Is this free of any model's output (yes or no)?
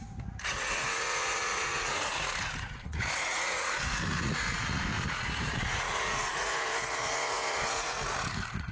no